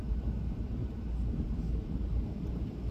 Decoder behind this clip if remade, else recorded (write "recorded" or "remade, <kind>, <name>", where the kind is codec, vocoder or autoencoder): remade, vocoder, BigVGAN v2